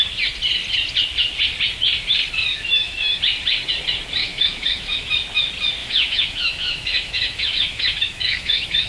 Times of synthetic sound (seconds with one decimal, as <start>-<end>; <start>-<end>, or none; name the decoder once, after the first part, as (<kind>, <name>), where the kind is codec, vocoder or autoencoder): 2.5-3.2 (autoencoder, DAC-VAE); 4.2-5.1; 5.8-8.9